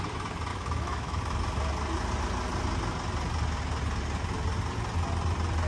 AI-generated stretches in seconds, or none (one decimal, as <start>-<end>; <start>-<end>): 0.5-1.2